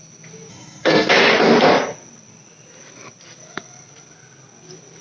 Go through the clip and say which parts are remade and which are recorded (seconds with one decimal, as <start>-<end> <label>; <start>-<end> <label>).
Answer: 0.0-0.5 recorded; 0.5-1.1 remade; 1.1-5.0 recorded